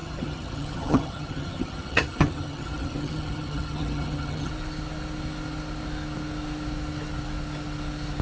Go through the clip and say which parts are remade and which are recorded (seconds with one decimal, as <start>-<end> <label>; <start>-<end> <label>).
0.0-4.5 remade; 4.5-8.2 recorded

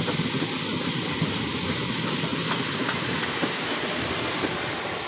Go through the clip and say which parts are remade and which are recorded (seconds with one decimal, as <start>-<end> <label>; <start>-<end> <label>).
0.0-5.1 recorded

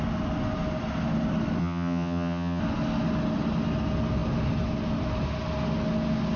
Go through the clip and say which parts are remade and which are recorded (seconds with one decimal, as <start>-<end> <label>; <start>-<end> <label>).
0.0-1.6 recorded; 1.6-2.6 remade; 2.6-6.4 recorded

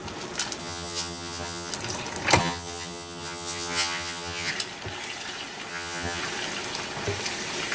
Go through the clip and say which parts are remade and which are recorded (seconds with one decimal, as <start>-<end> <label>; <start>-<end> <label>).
0.0-0.6 recorded; 0.6-1.7 remade; 1.7-2.4 recorded; 2.4-4.5 remade; 4.5-5.7 recorded; 5.7-6.2 remade; 6.2-7.7 recorded

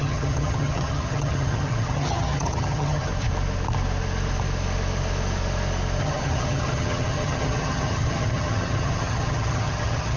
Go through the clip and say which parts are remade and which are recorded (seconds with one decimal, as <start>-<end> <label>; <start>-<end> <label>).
0.0-3.1 remade; 3.1-6.0 recorded; 6.0-10.2 remade

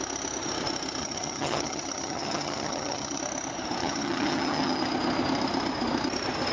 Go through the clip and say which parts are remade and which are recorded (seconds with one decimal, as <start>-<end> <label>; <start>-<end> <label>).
0.0-1.0 recorded; 1.0-3.2 remade; 3.2-3.8 recorded; 3.8-4.8 remade; 4.8-6.5 recorded

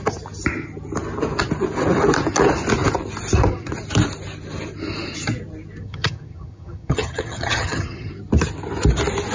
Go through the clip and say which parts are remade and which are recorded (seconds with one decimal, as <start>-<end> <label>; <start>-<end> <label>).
0.0-5.8 recorded; 5.8-8.1 remade; 8.1-9.3 recorded

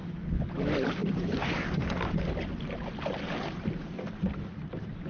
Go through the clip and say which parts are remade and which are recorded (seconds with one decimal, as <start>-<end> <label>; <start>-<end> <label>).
0.0-5.1 recorded